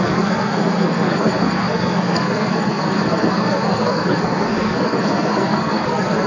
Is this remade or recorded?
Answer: remade